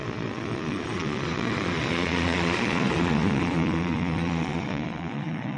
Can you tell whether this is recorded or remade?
remade